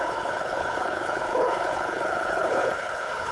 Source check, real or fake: fake